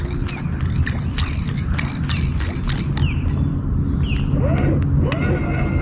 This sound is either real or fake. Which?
real